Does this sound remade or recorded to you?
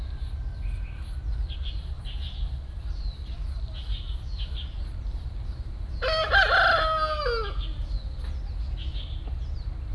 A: recorded